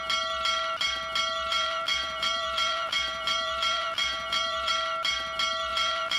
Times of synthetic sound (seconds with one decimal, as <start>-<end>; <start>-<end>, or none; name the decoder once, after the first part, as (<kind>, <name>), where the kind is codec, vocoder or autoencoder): 1.5-4.7 (vocoder, BigVGAN v2); 5.7-6.2